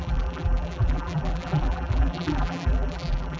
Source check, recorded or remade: remade